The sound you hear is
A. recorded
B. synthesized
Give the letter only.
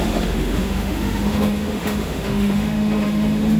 B